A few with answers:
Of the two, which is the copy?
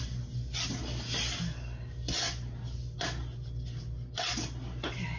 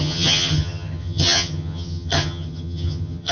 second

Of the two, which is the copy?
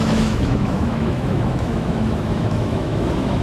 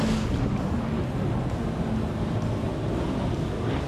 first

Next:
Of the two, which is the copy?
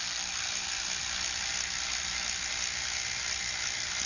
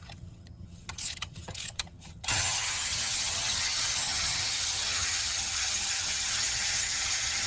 second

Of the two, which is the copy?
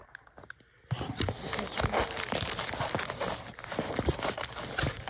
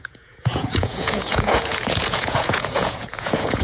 second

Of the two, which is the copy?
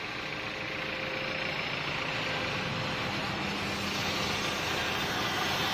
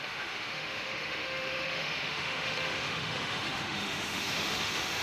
second